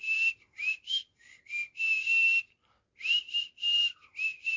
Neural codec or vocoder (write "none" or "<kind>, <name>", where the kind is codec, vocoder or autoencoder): none